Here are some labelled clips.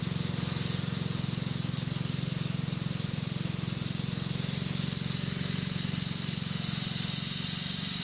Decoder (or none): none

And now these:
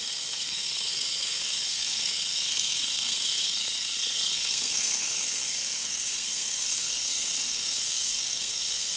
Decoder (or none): codec, SNAC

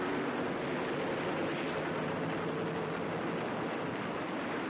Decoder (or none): none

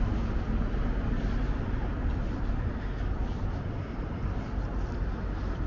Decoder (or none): none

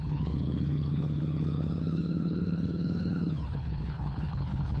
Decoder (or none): codec, HILCodec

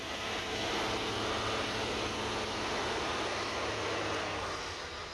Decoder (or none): none